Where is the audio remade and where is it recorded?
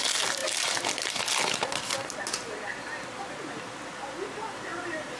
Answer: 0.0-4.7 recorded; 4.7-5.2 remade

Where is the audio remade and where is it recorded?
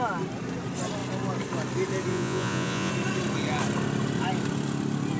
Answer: 0.0-2.1 recorded; 2.1-2.9 remade; 2.9-5.2 recorded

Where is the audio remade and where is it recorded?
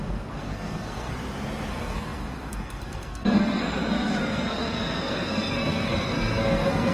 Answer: 0.0-1.1 remade; 1.1-1.7 recorded; 1.7-6.9 remade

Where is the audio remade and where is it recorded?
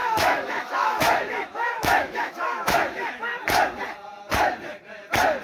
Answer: 0.0-3.2 remade; 3.2-5.4 recorded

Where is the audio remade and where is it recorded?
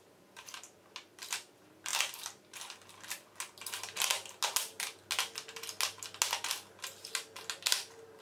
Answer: 0.0-8.2 recorded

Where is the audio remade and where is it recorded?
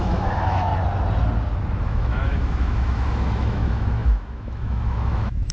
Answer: 0.0-0.7 remade; 0.7-1.8 recorded; 1.8-5.5 remade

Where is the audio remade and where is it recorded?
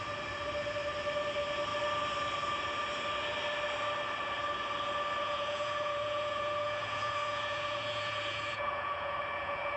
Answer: 0.0-5.2 recorded; 5.2-9.8 remade